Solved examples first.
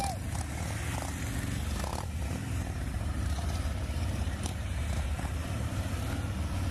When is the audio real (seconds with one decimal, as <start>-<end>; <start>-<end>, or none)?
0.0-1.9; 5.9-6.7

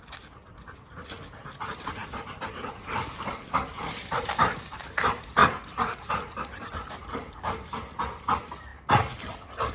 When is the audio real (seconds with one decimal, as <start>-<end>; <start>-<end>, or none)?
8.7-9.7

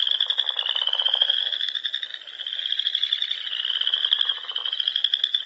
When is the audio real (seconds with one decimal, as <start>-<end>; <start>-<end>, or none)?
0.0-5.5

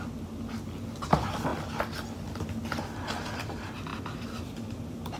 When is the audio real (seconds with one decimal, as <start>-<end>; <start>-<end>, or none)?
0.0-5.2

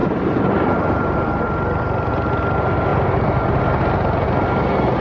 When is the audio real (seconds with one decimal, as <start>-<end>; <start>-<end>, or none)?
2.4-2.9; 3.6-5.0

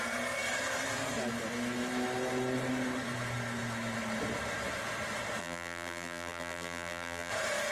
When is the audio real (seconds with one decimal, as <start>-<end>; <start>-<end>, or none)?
0.0-5.4; 7.3-7.7

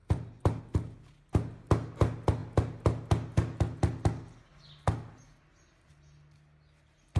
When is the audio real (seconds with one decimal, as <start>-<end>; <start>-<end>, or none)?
0.6-7.2